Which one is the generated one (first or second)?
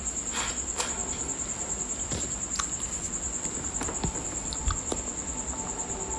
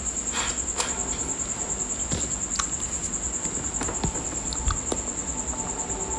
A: first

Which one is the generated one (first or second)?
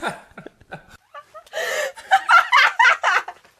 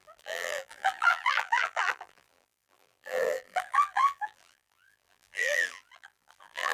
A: second